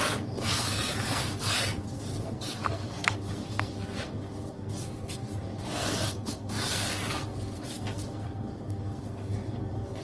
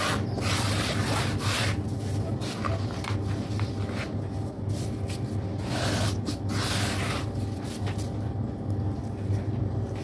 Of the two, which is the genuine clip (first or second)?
second